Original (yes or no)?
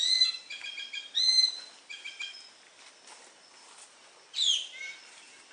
yes